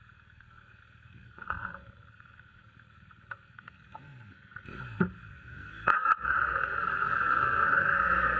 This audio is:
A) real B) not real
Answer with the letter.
B